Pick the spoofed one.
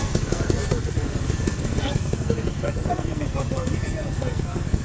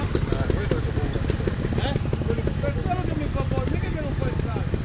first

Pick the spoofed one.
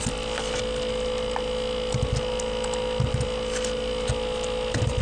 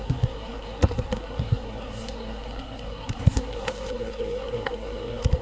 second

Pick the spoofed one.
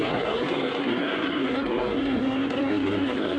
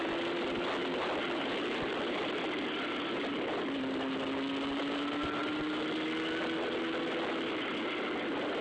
first